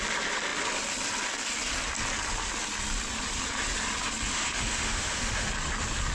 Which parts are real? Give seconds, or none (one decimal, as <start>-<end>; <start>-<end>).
0.0-4.3; 5.5-6.1